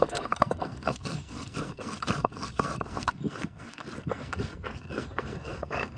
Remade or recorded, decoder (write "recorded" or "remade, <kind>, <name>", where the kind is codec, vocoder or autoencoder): remade, codec, SNAC